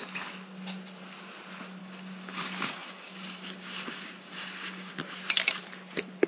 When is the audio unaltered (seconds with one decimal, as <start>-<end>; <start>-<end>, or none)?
0.0-1.8; 4.9-6.3